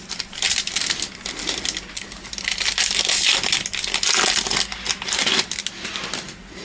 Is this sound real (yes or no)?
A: yes